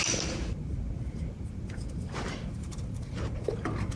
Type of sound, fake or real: real